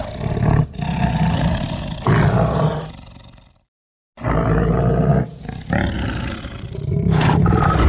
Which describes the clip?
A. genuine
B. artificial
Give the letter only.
A